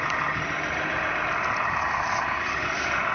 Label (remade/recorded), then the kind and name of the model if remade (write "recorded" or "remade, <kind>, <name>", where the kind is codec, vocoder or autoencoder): recorded